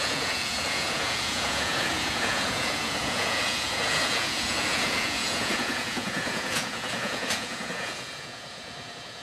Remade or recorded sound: remade